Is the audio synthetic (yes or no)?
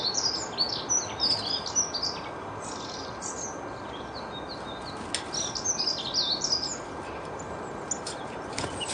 no